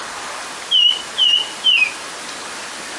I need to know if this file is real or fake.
real